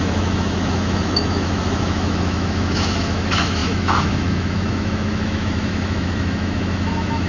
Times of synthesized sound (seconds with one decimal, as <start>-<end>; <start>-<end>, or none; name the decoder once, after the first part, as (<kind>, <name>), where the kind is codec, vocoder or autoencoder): 0.0-7.3 (autoencoder, DAC-VAE)